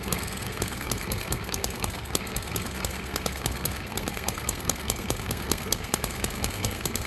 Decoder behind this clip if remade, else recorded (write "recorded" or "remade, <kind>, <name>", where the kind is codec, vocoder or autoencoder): remade, codec, SNAC